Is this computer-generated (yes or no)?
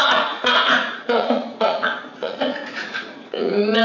yes